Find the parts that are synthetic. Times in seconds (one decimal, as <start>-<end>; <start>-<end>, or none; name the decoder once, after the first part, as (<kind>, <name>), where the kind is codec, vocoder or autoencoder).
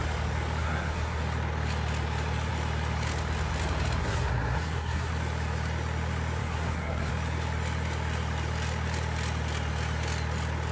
0.6-1.2 (codec, SNAC); 4.0-5.1; 6.4-7.1